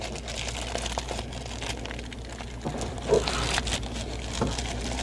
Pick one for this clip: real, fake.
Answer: real